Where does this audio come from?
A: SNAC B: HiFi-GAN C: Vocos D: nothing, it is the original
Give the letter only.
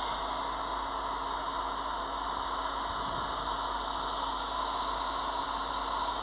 D